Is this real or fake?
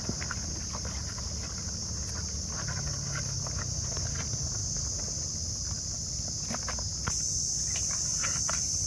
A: real